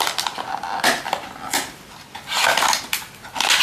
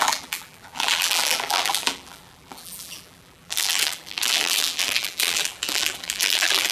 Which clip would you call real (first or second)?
first